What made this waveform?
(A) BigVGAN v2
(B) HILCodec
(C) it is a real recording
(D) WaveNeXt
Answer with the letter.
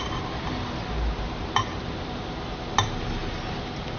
C